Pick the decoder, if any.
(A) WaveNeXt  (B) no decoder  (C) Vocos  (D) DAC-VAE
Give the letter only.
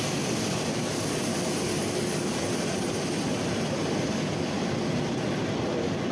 B